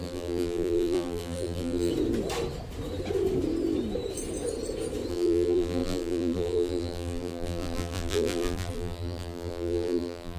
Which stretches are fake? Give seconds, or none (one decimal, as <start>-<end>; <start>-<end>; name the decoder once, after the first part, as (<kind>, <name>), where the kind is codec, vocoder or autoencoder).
0.0-1.9 (vocoder, BigVGAN v2); 5.1-10.4